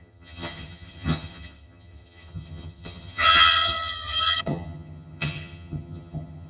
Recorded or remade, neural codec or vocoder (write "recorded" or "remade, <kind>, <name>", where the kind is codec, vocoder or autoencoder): remade, vocoder, HiFi-GAN